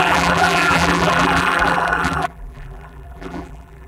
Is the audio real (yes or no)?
no